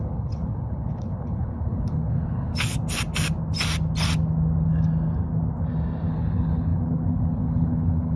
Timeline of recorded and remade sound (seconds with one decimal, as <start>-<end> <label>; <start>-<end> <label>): 0.0-2.5 remade; 2.5-6.1 recorded; 6.1-8.2 remade